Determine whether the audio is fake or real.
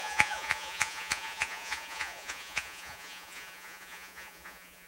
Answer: fake